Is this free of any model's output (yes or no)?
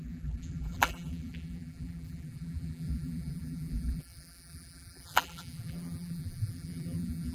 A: no